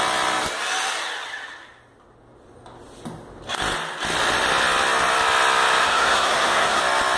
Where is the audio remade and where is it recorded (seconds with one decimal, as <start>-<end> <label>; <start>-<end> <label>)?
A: 0.0-5.8 recorded; 5.8-6.8 remade; 6.8-7.2 recorded